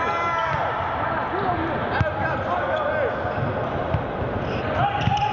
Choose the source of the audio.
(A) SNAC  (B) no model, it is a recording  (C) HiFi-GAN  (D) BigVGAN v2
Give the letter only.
B